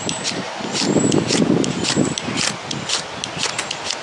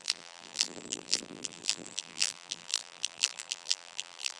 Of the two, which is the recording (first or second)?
first